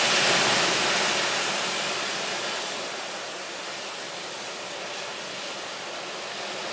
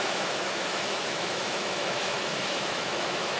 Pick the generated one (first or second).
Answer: second